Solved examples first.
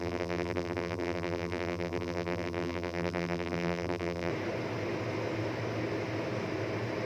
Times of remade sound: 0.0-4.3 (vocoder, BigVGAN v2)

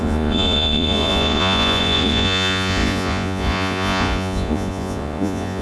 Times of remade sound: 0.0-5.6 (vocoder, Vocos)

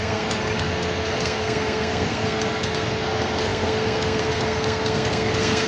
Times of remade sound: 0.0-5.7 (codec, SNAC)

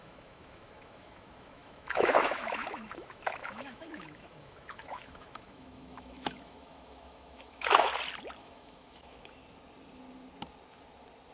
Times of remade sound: 0.0-7.9 (autoencoder, DAC-VAE); 8.4-9.4